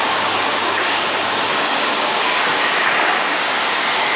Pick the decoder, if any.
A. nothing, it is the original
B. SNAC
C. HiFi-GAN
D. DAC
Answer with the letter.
D